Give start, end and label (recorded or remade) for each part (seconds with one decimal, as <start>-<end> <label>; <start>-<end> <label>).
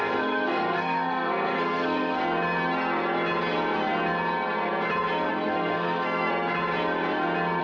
0.0-2.2 remade; 2.2-5.3 recorded; 5.3-6.3 remade; 6.3-7.6 recorded